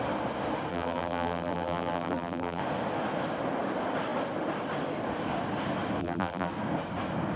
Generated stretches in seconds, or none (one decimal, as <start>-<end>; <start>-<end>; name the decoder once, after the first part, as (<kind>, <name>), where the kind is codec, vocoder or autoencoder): 0.7-2.6 (vocoder, BigVGAN v2); 6.0-6.5